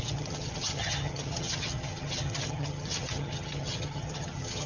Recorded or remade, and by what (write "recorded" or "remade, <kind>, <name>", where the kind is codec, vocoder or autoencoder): remade, vocoder, HiFi-GAN